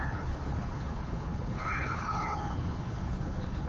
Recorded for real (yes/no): no